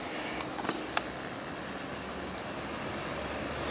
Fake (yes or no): no